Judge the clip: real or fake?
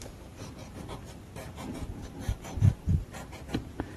fake